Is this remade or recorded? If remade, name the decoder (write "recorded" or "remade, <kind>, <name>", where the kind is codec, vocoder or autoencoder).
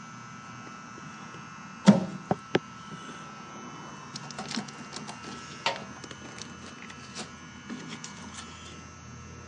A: recorded